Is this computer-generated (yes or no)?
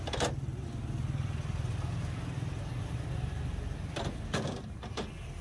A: no